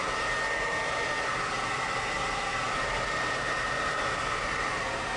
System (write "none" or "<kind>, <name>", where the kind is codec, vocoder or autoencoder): none